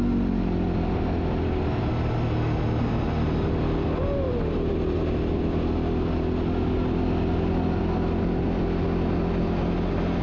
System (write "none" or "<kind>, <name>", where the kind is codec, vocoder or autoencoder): none